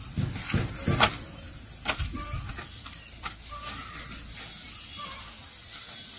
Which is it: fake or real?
real